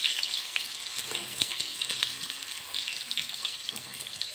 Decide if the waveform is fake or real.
fake